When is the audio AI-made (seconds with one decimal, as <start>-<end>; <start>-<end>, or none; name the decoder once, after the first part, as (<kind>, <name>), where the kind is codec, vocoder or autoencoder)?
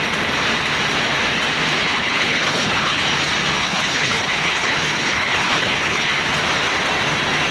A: 1.8-3.0 (codec, HILCodec); 3.6-6.1